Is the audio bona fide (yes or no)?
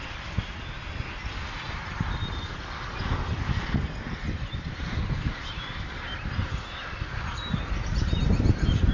yes